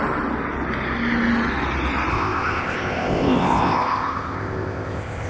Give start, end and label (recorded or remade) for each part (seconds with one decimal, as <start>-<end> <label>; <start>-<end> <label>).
0.0-2.1 recorded; 2.1-5.3 remade